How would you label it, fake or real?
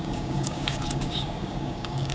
fake